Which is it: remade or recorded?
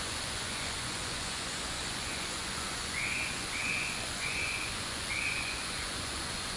remade